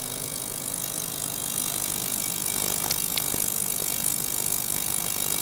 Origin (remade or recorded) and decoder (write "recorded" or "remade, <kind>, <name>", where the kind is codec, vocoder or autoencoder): remade, vocoder, Vocos